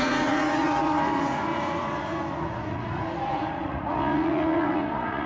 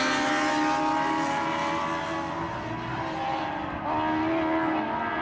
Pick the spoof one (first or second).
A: first